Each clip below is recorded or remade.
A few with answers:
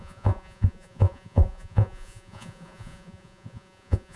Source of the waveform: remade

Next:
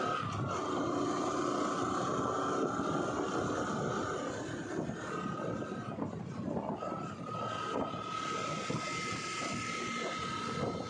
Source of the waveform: recorded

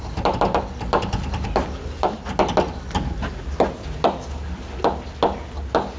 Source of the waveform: recorded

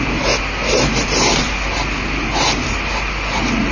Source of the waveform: recorded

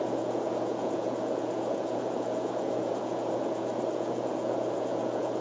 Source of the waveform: remade